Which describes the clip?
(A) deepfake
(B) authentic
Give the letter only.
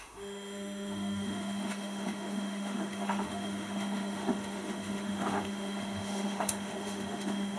A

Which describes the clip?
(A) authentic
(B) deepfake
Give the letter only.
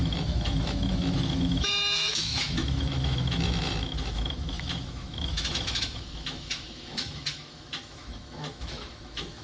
B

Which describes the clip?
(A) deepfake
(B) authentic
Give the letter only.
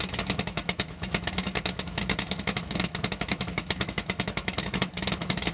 A